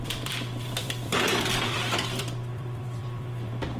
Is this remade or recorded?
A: remade